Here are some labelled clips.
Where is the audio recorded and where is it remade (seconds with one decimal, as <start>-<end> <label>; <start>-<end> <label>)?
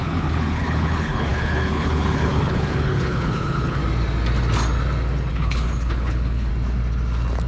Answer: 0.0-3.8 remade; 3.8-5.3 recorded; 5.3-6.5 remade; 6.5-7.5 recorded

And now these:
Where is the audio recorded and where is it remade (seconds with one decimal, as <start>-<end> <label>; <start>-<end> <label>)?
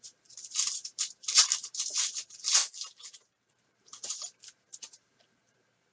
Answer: 0.0-2.6 remade; 2.6-3.5 recorded; 3.5-5.9 remade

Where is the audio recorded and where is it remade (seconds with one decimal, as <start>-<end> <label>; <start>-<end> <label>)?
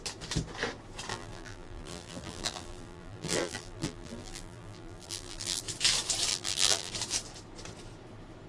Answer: 0.0-1.1 recorded; 1.1-5.6 remade; 5.6-6.3 recorded; 6.3-6.9 remade; 6.9-8.5 recorded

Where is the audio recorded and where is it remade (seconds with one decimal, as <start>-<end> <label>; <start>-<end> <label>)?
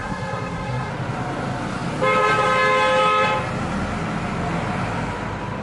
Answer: 0.0-0.9 remade; 0.9-5.6 recorded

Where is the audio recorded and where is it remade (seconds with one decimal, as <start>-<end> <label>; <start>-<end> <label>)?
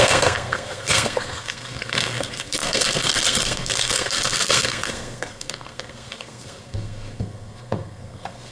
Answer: 0.0-8.5 remade